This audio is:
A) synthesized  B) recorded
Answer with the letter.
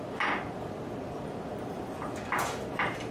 B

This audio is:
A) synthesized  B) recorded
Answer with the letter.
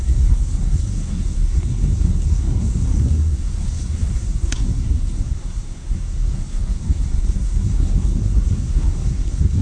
A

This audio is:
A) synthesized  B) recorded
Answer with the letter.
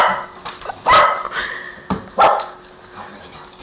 B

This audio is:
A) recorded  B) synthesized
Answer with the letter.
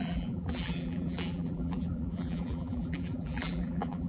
B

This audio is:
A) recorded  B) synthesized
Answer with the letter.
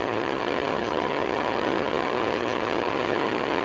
B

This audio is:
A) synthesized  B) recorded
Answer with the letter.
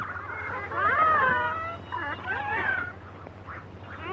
B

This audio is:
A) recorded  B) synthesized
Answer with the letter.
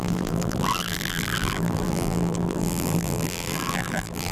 B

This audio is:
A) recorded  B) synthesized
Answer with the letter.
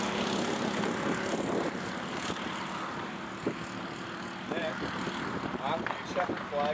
A